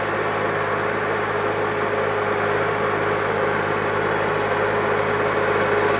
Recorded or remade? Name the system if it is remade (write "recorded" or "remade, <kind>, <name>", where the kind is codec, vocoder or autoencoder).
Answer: recorded